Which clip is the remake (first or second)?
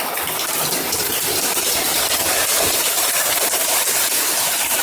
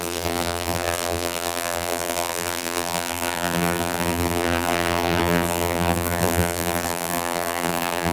second